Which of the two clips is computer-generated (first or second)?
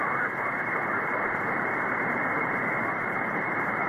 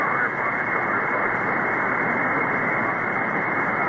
first